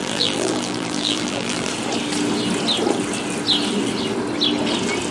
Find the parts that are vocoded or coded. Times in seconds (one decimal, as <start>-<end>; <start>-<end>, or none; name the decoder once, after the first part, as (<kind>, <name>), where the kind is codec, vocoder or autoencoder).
0.0-1.7 (vocoder, BigVGAN v2)